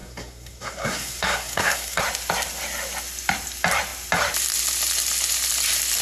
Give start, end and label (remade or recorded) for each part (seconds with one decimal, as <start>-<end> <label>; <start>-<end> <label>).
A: 0.0-2.0 remade; 2.0-6.0 recorded

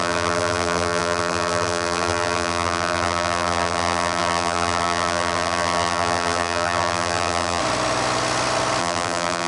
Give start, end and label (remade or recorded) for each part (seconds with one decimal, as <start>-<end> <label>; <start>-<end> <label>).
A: 0.0-7.6 remade; 7.6-8.8 recorded; 8.8-9.5 remade

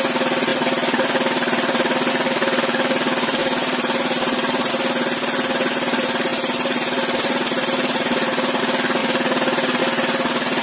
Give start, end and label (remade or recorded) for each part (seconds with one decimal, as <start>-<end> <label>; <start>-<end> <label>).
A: 0.0-3.4 recorded; 3.4-4.7 remade; 4.7-6.3 recorded; 6.3-8.6 remade; 8.6-9.0 recorded; 9.0-9.8 remade; 9.8-10.6 recorded

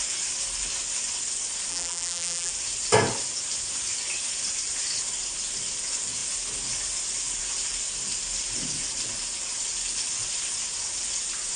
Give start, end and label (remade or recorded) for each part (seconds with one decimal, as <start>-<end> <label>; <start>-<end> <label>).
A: 0.0-1.7 recorded; 1.7-2.5 remade; 2.5-11.6 recorded

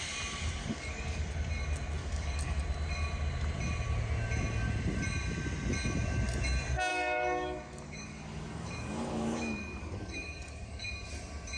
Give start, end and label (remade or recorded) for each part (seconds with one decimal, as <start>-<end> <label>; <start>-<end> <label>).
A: 0.0-0.6 recorded; 0.6-1.3 remade; 1.3-2.0 recorded; 2.0-2.6 remade; 2.6-6.9 recorded; 6.9-10.9 remade; 10.9-11.6 recorded

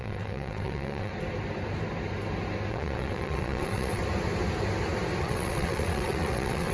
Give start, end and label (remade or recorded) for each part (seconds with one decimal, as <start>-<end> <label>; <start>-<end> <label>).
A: 0.0-1.1 remade; 1.1-2.7 recorded; 2.7-4.0 remade; 4.0-5.2 recorded; 5.2-6.7 remade

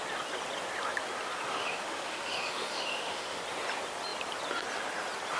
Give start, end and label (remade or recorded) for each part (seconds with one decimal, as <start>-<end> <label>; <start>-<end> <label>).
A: 0.0-1.5 recorded; 1.5-3.4 remade; 3.4-5.4 recorded

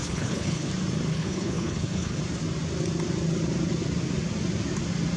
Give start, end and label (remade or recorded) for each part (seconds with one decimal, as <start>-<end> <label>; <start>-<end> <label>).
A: 0.0-0.7 remade; 0.7-1.1 recorded; 1.1-2.2 remade; 2.2-5.2 recorded